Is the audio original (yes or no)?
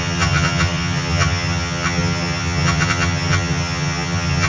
no